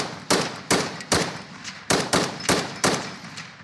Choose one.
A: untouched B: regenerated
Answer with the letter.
B